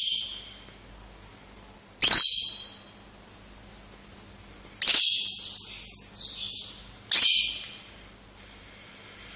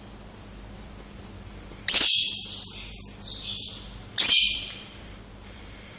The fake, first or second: second